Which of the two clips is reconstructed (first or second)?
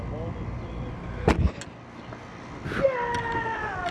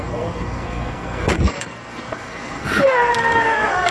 second